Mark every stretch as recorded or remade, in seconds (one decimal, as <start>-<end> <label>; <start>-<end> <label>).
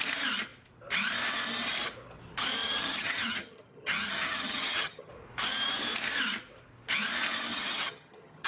0.0-2.6 recorded; 2.6-5.1 remade; 5.1-7.5 recorded; 7.5-8.5 remade